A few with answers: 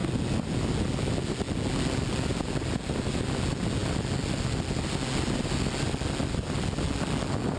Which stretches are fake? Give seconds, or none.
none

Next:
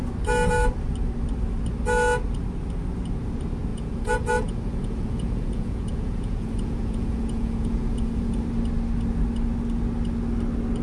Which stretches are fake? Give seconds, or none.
3.7-8.4 (vocoder, Vocos)

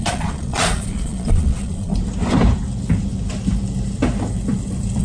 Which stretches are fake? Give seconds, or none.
0.0-1.9 (vocoder, Vocos)